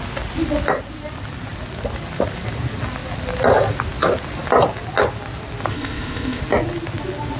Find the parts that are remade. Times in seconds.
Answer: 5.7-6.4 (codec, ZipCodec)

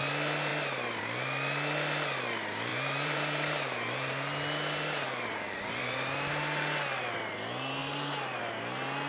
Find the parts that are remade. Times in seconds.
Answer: 2.7-6.3 (vocoder, BigVGAN v2); 7.8-8.4

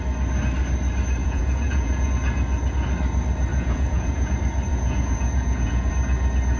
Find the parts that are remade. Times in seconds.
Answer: 1.2-2.1 (vocoder, Vocos); 3.5-4.3; 4.7-5.9

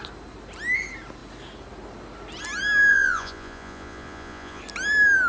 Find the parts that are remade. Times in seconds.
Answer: 2.9-4.6 (vocoder, Vocos)

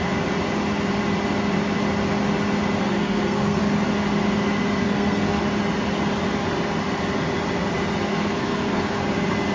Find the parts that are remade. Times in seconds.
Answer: 2.8-3.6 (codec, SNAC); 4.8-5.4; 8.1-8.9